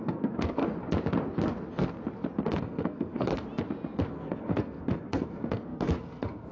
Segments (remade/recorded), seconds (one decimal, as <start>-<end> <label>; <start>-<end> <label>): 0.0-0.6 remade; 0.6-2.6 recorded; 2.6-3.3 remade; 3.3-4.1 recorded; 4.1-6.5 remade